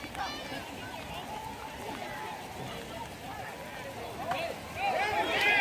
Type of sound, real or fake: real